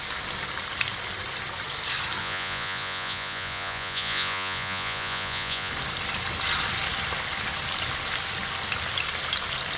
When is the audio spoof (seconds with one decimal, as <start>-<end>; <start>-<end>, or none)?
2.2-5.7